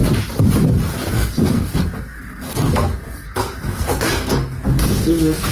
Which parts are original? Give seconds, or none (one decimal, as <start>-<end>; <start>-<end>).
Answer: 0.0-1.1

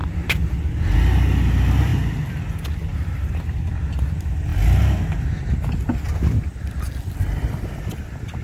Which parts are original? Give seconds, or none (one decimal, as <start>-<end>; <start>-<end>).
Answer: 0.7-2.9; 3.6-8.4

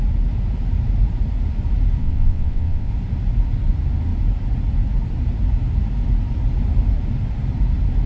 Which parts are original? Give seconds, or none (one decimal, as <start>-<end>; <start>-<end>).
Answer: 0.0-2.0; 2.9-8.1

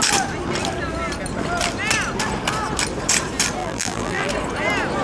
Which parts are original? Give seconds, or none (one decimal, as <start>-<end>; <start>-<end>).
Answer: 0.0-3.6; 4.3-5.0

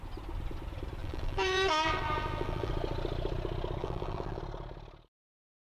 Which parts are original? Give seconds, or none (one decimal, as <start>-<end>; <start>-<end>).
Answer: 0.0-1.0; 2.7-3.8; 4.4-5.8